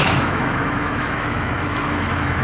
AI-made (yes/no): yes